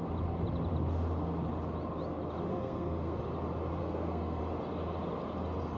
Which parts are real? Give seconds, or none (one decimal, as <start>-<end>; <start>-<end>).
0.0-2.5; 3.2-3.8; 4.4-5.8